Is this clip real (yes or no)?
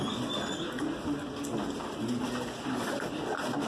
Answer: yes